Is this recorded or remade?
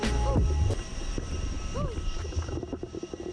recorded